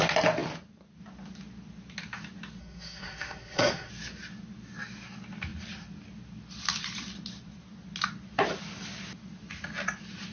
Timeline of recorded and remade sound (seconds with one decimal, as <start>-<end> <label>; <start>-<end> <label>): 0.0-2.6 recorded; 2.6-3.9 remade; 3.9-10.3 recorded